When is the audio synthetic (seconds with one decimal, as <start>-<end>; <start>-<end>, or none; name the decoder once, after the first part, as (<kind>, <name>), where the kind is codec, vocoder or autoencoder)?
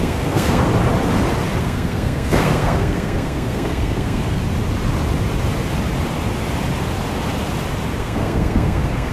0.0-0.7 (codec, SNAC); 1.6-4.4; 8.0-9.1